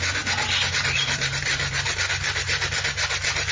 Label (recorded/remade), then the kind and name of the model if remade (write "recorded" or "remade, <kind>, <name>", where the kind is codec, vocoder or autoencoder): recorded